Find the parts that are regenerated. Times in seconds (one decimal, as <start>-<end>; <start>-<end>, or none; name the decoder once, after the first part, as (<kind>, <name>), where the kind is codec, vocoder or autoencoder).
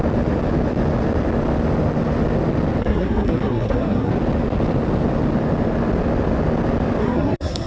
2.8-4.1 (codec, SNAC); 7.0-7.7